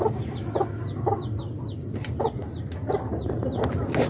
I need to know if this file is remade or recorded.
recorded